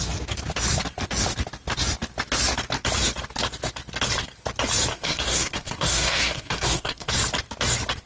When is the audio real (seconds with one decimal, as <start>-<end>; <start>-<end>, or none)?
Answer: 0.0-4.9; 7.1-8.1